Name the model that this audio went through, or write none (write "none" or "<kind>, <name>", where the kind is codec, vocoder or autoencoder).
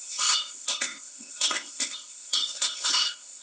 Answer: codec, ZipCodec